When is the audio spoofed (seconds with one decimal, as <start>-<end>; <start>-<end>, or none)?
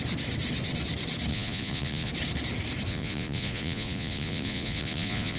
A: 1.3-2.1; 2.9-5.4